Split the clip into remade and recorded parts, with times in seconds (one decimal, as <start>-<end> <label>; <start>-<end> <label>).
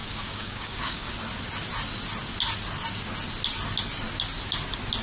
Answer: 0.0-1.1 remade; 1.1-5.0 recorded